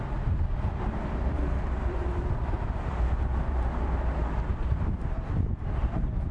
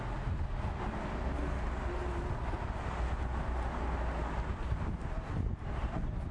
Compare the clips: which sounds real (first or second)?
second